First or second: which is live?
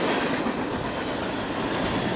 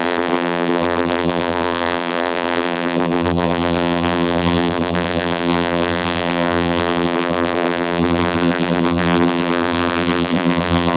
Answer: first